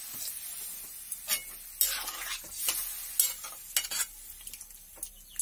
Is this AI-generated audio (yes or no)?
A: no